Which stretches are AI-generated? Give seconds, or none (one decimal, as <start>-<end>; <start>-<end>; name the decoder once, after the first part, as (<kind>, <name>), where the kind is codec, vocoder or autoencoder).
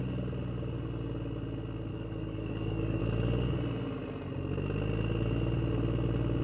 1.9-3.0 (codec, DAC)